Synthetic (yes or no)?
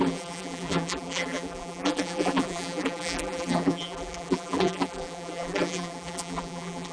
yes